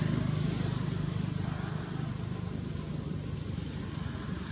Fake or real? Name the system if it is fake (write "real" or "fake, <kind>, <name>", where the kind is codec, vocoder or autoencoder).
real